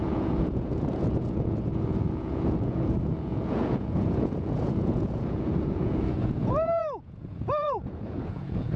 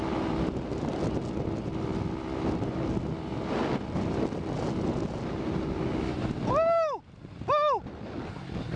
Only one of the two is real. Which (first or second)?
second